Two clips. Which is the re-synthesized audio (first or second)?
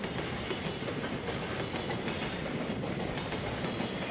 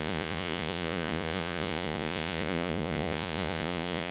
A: second